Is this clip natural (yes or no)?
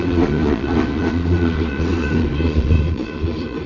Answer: no